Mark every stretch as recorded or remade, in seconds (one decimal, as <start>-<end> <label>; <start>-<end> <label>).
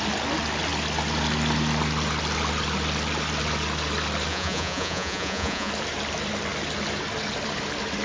0.0-4.3 recorded; 4.3-5.7 remade; 5.7-8.0 recorded